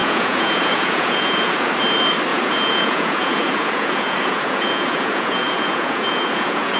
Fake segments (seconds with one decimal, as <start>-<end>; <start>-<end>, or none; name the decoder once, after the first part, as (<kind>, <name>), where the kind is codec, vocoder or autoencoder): 0.0-1.7 (vocoder, Vocos); 2.3-6.8